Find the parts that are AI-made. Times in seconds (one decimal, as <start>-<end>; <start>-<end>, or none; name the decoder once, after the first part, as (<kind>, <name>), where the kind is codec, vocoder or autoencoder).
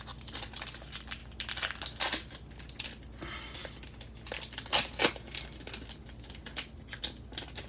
none